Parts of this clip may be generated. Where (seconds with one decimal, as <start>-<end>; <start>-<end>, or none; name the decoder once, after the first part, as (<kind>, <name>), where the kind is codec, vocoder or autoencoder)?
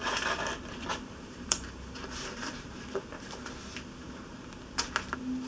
0.9-3.5 (vocoder, BigVGAN v2)